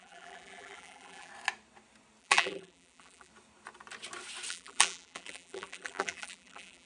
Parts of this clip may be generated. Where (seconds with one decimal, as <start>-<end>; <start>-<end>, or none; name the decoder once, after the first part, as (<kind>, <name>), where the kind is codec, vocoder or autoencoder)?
0.0-1.3 (vocoder, BigVGAN v2); 2.2-3.3; 4.5-6.9